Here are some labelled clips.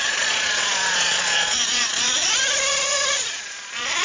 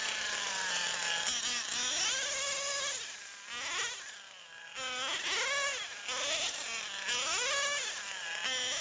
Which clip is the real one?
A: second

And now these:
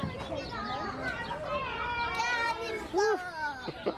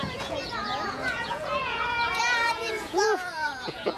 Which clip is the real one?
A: first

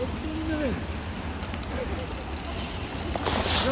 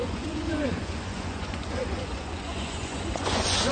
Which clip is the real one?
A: first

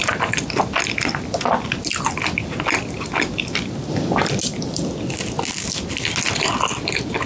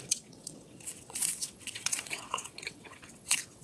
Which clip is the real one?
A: first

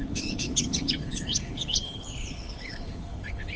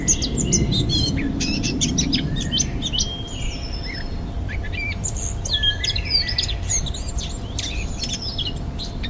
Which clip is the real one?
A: second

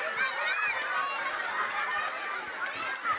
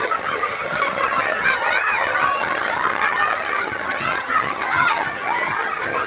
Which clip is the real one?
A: first